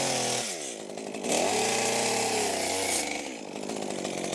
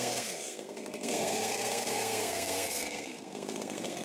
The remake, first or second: second